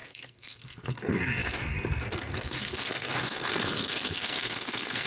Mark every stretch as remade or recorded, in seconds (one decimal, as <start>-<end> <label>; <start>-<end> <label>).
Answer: 0.0-5.1 remade